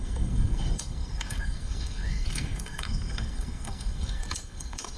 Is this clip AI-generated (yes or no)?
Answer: yes